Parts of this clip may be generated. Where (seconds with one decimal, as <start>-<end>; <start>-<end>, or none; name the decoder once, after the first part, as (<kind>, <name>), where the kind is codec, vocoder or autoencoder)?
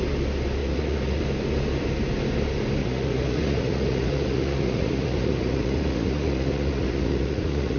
0.6-1.2 (vocoder, Vocos); 2.8-7.8